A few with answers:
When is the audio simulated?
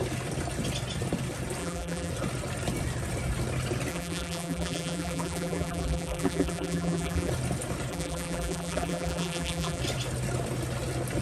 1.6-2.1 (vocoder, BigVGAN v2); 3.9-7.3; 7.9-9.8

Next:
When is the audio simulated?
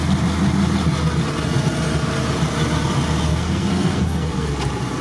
3.3-4.5 (codec, SNAC)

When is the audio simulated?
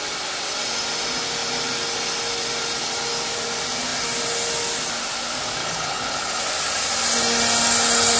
5.6-6.4 (codec, HILCodec)